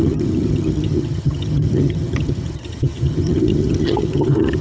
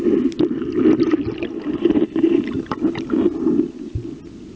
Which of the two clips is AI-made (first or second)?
first